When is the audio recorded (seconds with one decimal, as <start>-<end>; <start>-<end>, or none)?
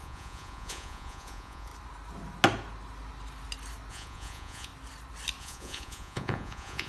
1.7-3.9; 4.7-5.4